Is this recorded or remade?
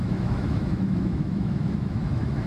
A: remade